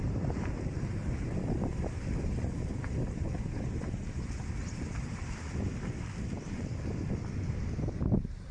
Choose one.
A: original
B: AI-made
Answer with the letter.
B